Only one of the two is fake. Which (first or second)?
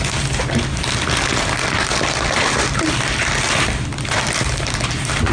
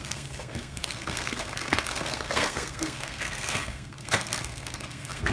second